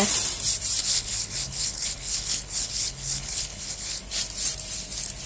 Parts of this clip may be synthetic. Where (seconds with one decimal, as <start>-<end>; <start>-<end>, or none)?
0.8-4.0